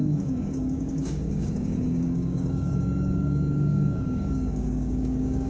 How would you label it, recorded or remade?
remade